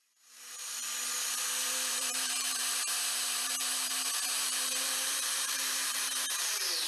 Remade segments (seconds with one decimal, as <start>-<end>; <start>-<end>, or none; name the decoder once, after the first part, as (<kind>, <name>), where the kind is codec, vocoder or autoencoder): 0.0-0.8 (vocoder, BigVGAN v2); 1.3-6.9